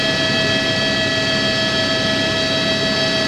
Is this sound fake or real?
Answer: real